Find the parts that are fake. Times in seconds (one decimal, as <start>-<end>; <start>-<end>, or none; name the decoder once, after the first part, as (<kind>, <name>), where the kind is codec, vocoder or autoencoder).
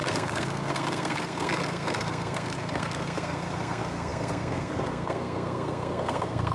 0.0-6.5 (codec, SNAC)